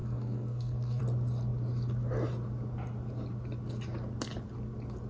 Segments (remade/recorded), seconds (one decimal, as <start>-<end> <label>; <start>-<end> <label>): 0.0-1.0 remade; 1.0-5.1 recorded

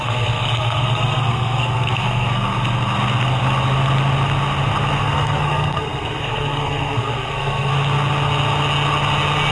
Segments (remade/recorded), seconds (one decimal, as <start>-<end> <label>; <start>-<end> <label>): 0.0-2.5 remade; 2.5-5.0 recorded; 5.0-7.7 remade; 7.7-9.5 recorded

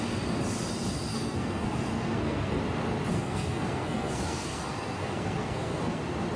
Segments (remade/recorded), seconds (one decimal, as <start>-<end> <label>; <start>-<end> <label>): 0.0-1.1 recorded; 1.1-2.6 remade; 2.6-3.1 recorded; 3.1-6.0 remade; 6.0-6.4 recorded

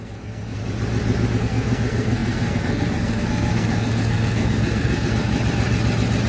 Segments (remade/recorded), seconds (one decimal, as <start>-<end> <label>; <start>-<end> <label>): 0.0-0.6 remade; 0.6-1.4 recorded; 1.4-5.3 remade; 5.3-6.3 recorded

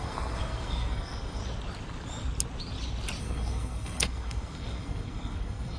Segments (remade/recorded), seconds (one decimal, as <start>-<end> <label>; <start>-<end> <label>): 0.0-1.4 remade; 1.4-3.2 recorded; 3.2-5.8 remade

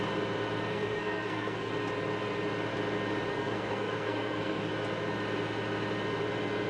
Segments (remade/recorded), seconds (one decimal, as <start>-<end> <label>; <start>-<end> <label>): 0.0-0.7 recorded; 0.7-1.7 remade; 1.7-3.3 recorded; 3.3-4.7 remade; 4.7-6.7 recorded

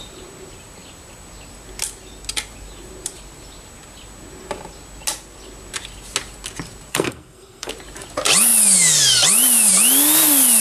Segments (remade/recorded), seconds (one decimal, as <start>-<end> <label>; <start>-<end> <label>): 0.0-6.9 recorded; 6.9-7.7 remade; 7.7-10.6 recorded